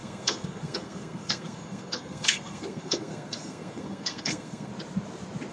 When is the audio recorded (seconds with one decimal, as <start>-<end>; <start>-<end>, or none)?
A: 4.7-5.5